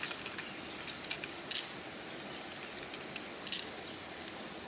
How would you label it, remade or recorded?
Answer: recorded